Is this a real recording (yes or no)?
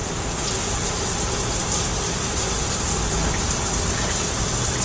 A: yes